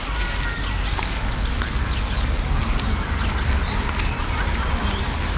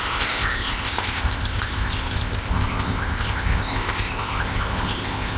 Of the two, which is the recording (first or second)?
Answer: first